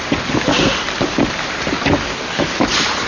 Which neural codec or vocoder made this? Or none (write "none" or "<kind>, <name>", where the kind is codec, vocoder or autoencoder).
none